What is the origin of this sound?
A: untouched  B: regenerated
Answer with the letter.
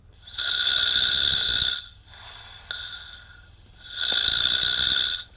A